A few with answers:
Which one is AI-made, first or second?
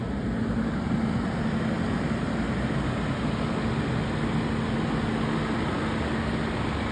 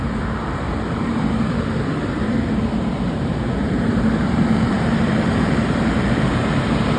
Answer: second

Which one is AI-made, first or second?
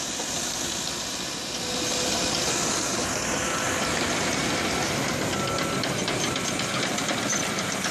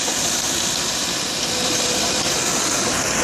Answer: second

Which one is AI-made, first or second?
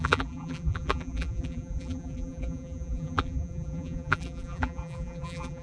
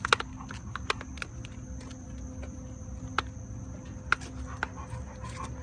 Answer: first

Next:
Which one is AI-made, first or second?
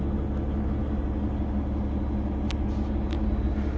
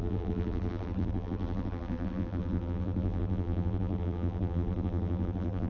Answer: second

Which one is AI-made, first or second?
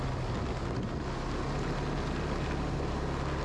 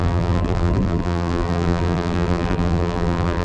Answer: second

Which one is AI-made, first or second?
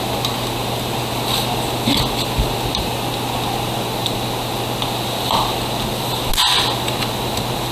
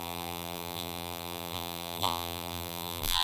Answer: second